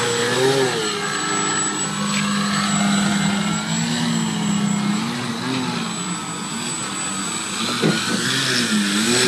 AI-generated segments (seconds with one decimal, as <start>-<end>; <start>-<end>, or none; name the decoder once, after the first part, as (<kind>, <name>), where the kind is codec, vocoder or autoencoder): none